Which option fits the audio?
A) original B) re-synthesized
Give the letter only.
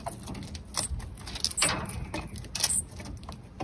A